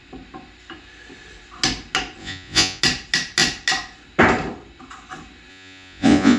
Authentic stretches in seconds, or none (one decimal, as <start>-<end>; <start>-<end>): 0.0-2.2; 2.8-5.5